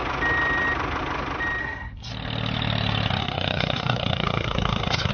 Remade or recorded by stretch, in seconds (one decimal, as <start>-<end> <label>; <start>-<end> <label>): 0.0-1.6 recorded; 1.6-2.1 remade; 2.1-3.2 recorded; 3.2-5.1 remade